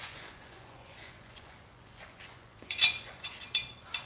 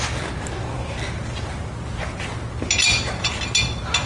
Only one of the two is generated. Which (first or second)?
first